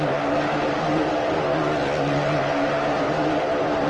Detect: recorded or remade recorded